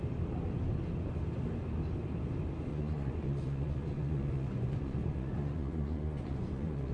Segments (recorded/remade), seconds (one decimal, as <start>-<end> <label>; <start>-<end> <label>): 0.0-2.7 recorded; 2.7-6.9 remade